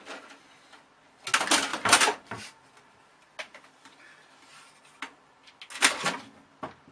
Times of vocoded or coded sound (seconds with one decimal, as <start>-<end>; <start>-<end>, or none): 1.7-3.0